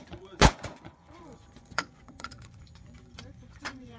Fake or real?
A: fake